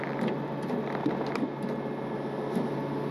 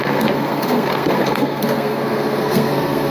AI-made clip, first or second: second